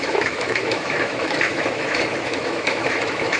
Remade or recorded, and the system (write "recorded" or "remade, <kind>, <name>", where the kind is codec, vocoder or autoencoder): remade, autoencoder, DAC-VAE